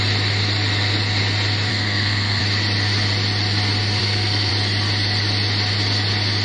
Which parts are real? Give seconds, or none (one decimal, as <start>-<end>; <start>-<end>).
0.0-1.7; 2.4-4.0; 4.5-6.4